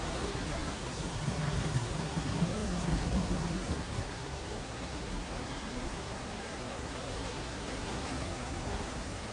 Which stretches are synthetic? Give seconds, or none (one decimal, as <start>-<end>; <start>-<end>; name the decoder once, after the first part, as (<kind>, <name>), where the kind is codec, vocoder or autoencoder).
0.0-9.3 (codec, SNAC)